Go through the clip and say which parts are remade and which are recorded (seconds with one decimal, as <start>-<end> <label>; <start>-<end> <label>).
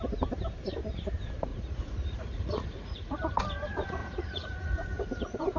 0.0-1.5 recorded; 1.5-3.2 remade; 3.2-4.0 recorded; 4.0-5.6 remade